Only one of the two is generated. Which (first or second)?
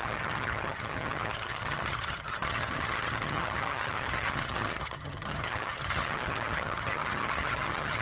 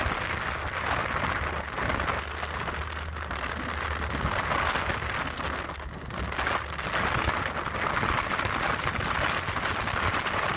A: first